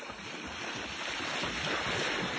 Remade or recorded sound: recorded